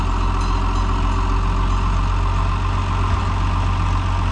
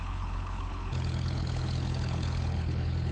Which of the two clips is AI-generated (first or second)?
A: second